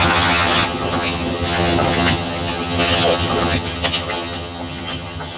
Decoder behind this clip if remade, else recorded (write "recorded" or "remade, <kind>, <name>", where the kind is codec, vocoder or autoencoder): remade, vocoder, HiFi-GAN